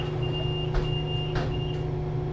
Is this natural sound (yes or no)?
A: yes